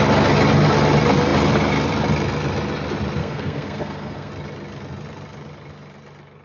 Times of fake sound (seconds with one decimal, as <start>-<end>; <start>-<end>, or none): 3.2-4.3

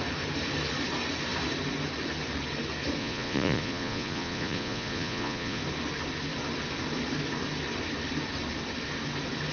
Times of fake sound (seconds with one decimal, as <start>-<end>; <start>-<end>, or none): 3.0-5.6

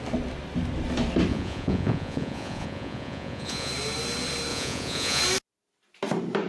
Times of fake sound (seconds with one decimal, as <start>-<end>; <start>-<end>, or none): 1.3-3.7; 4.5-5.2

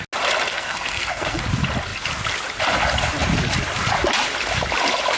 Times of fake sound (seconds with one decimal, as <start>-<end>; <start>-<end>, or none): 0.5-1.4